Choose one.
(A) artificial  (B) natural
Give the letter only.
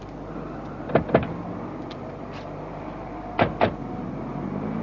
B